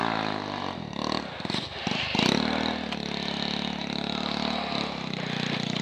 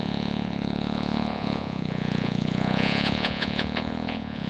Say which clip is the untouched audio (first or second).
first